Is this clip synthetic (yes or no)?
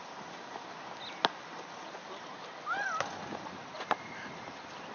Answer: no